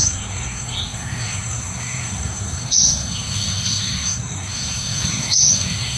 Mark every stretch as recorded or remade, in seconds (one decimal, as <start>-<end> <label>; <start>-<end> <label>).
0.0-6.0 remade